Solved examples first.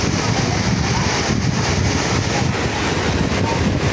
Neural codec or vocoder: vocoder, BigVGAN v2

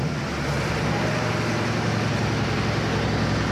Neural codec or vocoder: none